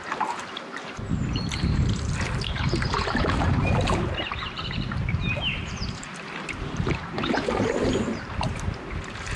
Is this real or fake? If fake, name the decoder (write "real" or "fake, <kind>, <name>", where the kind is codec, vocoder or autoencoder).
fake, vocoder, BigVGAN v2